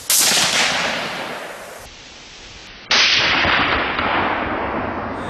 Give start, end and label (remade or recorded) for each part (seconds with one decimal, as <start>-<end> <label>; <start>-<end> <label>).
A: 0.0-5.3 recorded

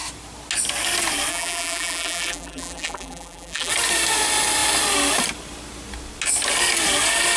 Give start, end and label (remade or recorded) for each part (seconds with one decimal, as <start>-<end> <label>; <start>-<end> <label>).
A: 0.0-1.3 recorded; 1.3-3.7 remade; 3.7-7.4 recorded

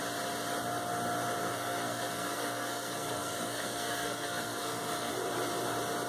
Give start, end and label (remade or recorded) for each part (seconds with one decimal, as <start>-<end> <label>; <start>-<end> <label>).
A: 0.0-1.4 recorded; 1.4-5.1 remade; 5.1-6.1 recorded

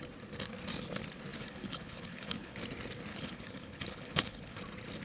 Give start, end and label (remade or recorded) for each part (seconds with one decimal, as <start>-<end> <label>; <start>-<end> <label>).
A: 0.0-1.3 recorded; 1.3-2.6 remade; 2.6-3.1 recorded; 3.1-4.6 remade; 4.6-5.0 recorded

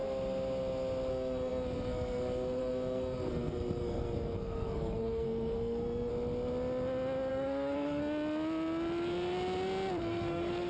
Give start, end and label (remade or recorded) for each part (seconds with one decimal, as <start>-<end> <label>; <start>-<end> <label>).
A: 0.0-1.1 recorded; 1.1-6.1 remade; 6.1-7.3 recorded; 7.3-8.0 remade; 8.0-10.0 recorded; 10.0-10.7 remade

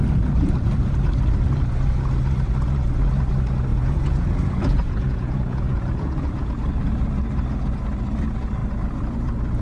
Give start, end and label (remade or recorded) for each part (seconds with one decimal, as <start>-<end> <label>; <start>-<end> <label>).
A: 0.0-3.7 recorded; 3.7-6.5 remade; 6.5-9.6 recorded

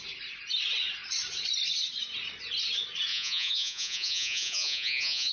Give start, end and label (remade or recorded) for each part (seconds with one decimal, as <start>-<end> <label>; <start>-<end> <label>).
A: 0.0-3.1 recorded; 3.1-5.3 remade